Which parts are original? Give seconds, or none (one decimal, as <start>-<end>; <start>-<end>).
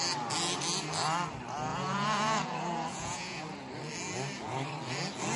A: 0.0-1.7; 3.4-5.4